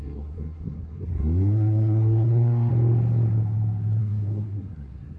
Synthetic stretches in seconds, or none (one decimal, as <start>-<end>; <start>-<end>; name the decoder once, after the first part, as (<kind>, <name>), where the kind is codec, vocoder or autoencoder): 0.0-2.7 (codec, SNAC); 4.0-5.2